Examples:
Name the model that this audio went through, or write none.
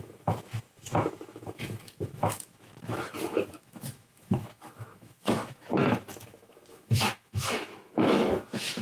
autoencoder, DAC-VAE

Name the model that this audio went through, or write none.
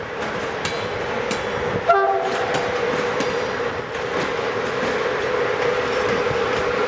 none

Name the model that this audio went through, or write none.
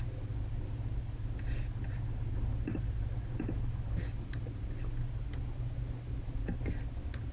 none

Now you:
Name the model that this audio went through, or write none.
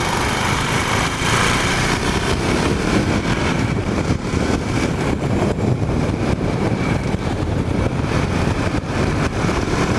vocoder, BigVGAN v2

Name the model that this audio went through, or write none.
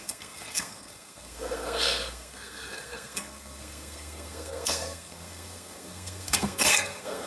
codec, SNAC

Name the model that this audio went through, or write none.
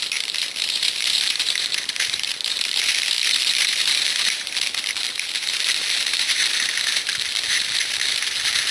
vocoder, BigVGAN v2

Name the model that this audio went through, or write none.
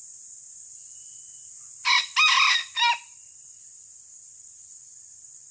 none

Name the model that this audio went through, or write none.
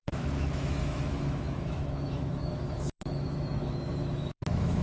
autoencoder, DAC-VAE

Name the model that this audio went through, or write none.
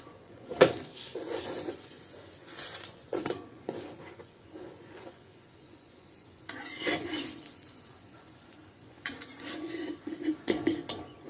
vocoder, Vocos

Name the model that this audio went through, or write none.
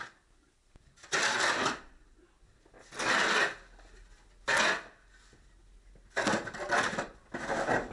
none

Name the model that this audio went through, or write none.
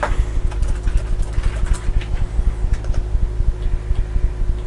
none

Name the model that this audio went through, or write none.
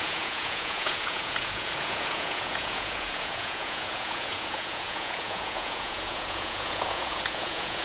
vocoder, Vocos